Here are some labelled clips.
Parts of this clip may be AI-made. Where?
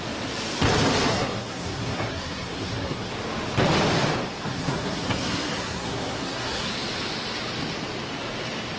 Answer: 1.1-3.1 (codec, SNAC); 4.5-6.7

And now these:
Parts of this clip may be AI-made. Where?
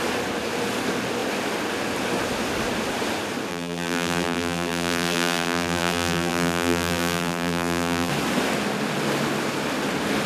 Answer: 3.5-8.1 (vocoder, BigVGAN v2)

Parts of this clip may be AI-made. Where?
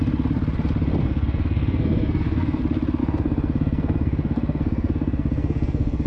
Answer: 1.0-2.6 (codec, SNAC); 3.0-6.1